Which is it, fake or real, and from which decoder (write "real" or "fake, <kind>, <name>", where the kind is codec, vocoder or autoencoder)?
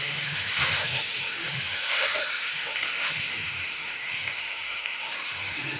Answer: fake, autoencoder, DAC-VAE